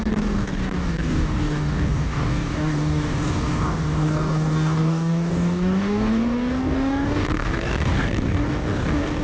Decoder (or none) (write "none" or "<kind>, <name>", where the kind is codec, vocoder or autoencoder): codec, DAC